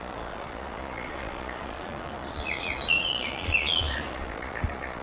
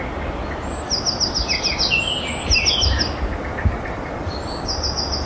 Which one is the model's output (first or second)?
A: first